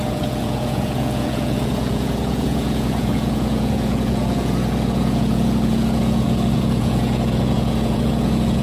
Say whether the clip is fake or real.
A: fake